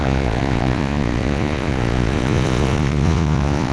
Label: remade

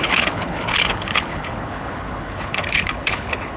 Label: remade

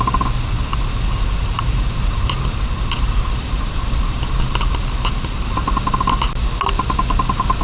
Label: recorded